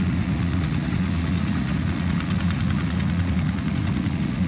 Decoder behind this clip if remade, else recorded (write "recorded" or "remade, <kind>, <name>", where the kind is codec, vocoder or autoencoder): remade, vocoder, Vocos